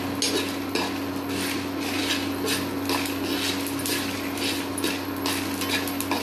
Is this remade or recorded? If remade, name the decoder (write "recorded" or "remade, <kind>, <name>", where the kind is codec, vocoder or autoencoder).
recorded